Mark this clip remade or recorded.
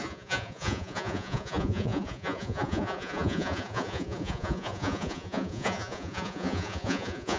remade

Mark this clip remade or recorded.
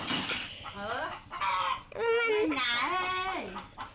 recorded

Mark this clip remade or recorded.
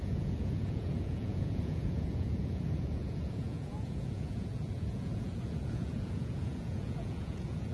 remade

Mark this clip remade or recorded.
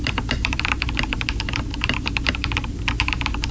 remade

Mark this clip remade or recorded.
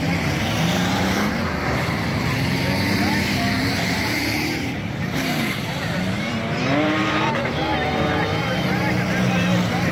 remade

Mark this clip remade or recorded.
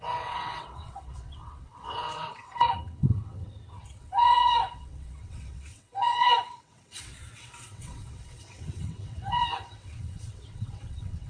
remade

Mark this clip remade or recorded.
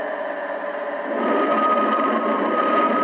recorded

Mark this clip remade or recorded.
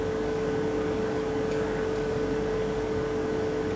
remade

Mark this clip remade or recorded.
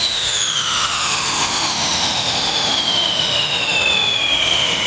remade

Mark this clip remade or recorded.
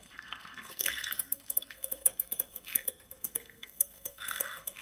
remade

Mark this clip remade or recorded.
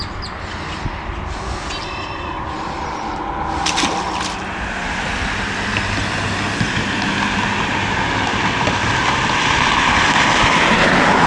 recorded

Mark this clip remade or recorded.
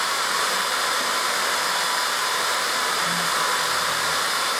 remade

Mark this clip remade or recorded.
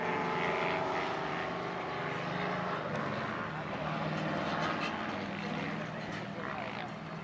recorded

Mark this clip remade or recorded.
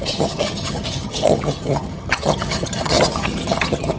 remade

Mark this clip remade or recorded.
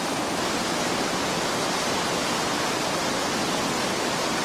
recorded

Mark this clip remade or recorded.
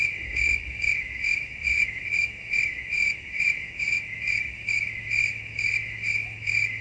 remade